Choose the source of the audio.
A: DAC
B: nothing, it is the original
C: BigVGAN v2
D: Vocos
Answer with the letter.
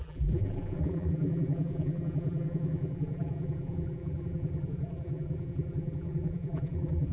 C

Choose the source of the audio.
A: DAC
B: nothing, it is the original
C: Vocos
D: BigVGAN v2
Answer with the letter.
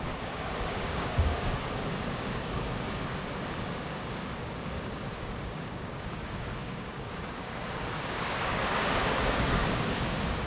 A